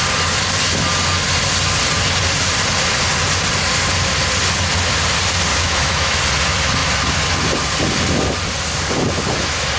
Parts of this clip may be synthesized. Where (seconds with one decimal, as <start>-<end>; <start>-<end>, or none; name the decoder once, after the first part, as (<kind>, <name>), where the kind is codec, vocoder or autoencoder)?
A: 5.5-6.2 (autoencoder, DAC-VAE)